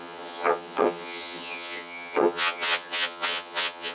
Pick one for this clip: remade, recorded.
remade